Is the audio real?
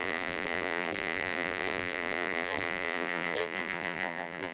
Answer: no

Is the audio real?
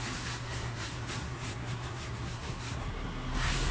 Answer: no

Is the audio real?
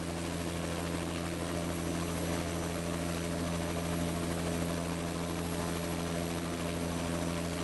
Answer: yes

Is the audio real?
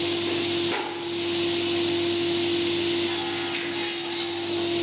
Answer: yes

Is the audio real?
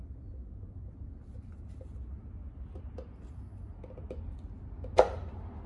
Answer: yes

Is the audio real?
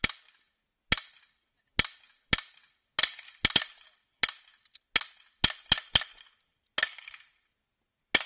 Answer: yes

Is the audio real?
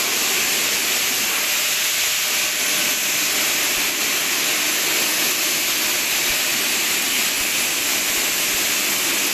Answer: yes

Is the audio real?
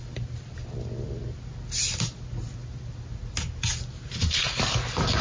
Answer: yes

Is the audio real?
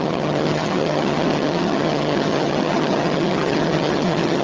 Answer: no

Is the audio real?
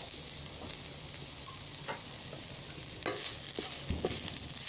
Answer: yes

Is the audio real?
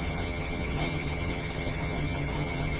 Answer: no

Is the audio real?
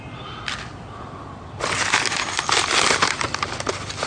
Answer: yes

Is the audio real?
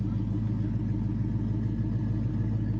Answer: yes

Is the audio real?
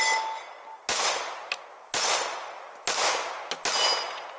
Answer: yes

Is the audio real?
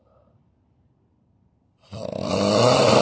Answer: yes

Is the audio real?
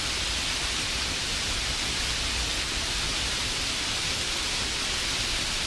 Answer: yes